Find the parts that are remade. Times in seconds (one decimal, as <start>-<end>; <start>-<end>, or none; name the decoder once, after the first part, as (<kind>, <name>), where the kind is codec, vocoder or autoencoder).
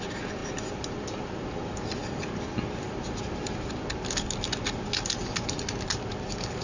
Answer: none